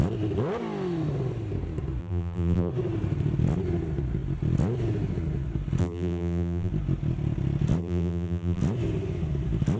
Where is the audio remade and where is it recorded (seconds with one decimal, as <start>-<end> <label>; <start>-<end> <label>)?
0.0-2.0 recorded; 2.0-2.7 remade; 2.7-5.8 recorded; 5.8-6.7 remade; 6.7-7.8 recorded; 7.8-8.6 remade; 8.6-9.8 recorded